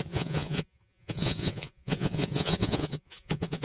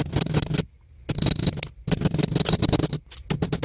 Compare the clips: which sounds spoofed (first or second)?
first